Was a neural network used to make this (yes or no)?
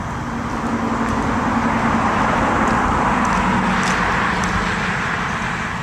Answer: no